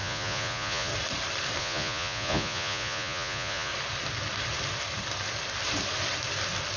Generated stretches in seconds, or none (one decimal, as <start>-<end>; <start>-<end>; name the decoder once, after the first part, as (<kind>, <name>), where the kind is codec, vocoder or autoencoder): 0.0-0.9 (vocoder, Vocos); 1.6-3.7